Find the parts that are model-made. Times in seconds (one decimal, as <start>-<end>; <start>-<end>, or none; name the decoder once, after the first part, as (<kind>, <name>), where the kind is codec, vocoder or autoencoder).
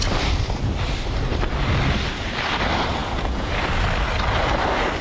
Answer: 3.0-3.5 (vocoder, Vocos)